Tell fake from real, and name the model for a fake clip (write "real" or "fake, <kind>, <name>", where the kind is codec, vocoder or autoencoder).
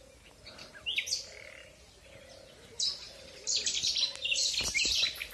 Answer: real